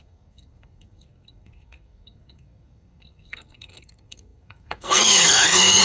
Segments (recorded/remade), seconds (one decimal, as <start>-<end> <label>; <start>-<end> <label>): 0.0-5.8 remade